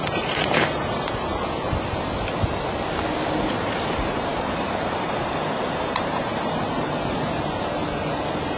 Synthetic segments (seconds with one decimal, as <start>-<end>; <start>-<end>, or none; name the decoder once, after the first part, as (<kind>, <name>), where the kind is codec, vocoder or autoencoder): 0.0-1.3 (vocoder, BigVGAN v2); 3.4-8.6